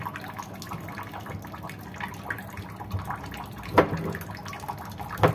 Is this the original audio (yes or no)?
yes